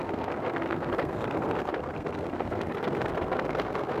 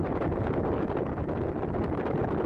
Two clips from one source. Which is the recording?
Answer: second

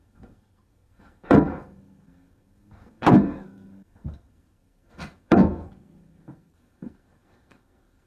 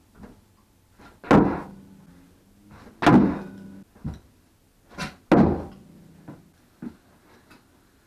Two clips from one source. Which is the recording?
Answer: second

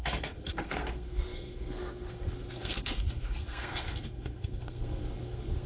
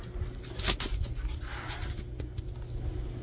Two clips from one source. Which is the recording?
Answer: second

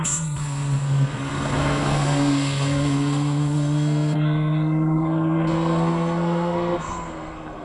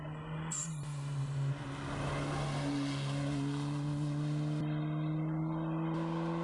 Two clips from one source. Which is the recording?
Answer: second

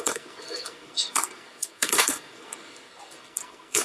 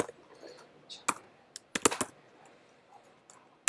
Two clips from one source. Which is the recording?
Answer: second